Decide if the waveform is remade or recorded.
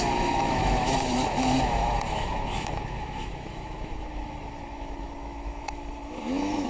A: remade